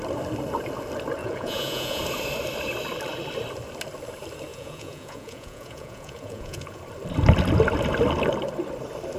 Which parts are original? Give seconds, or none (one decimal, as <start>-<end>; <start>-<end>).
0.0-1.2; 2.0-4.5; 6.8-9.2